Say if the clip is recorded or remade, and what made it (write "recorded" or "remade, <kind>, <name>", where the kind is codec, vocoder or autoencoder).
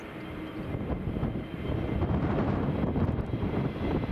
recorded